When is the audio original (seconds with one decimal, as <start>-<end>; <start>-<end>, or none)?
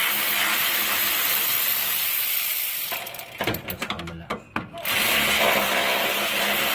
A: 0.0-6.7